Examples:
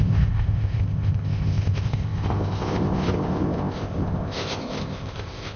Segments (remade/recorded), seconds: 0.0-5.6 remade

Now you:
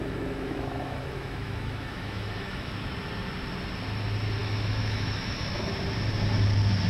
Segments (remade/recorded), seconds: 0.0-2.7 remade; 2.7-4.4 recorded; 4.4-5.7 remade; 5.7-6.9 recorded

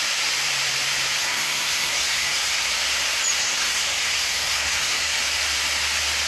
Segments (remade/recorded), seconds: 0.0-1.2 recorded; 1.2-2.7 remade; 2.7-3.4 recorded; 3.4-5.2 remade; 5.2-6.3 recorded